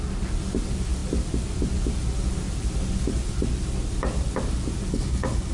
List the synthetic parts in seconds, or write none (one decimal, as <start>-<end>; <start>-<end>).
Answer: 4.9-5.5